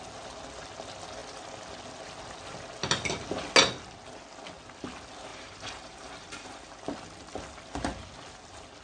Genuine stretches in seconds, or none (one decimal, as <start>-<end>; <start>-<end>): 0.0-5.3; 6.7-8.8